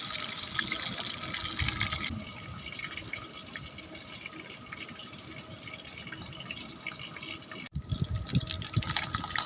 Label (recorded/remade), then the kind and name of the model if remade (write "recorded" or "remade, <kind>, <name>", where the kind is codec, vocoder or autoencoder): recorded